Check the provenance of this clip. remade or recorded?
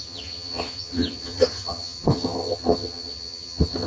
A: remade